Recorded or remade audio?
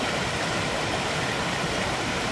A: recorded